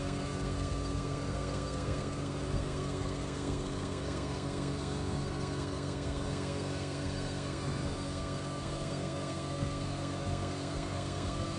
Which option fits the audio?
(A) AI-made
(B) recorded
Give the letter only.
A